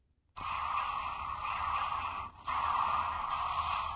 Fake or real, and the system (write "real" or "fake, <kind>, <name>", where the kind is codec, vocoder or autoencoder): real